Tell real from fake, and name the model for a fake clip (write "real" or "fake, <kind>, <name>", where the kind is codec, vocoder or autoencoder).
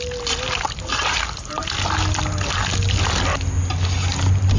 real